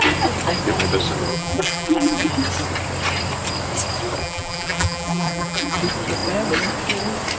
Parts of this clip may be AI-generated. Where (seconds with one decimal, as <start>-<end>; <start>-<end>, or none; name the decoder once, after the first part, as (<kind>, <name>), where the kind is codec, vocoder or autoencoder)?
1.3-2.3 (vocoder, BigVGAN v2); 4.2-5.8